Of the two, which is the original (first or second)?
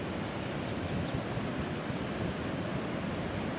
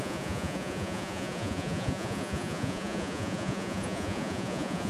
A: first